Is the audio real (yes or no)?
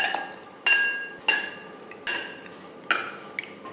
yes